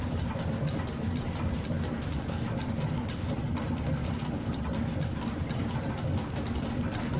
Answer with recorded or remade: recorded